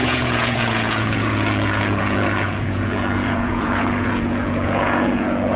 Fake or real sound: fake